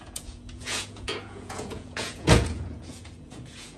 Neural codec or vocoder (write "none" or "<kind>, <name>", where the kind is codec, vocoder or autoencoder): vocoder, Vocos